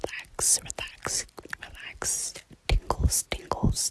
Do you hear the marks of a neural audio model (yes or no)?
no